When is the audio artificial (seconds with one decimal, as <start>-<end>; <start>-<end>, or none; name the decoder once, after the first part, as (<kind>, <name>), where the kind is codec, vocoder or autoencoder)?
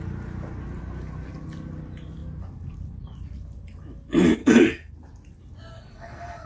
4.4-4.9 (codec, SNAC); 5.7-6.5